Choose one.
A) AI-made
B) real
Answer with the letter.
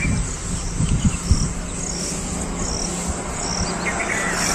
B